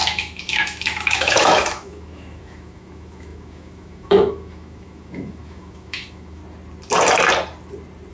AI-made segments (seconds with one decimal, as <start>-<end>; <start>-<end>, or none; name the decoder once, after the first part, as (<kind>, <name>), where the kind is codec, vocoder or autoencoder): 0.0-6.4 (autoencoder, DAC-VAE)